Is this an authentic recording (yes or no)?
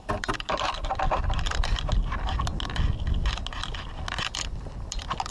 yes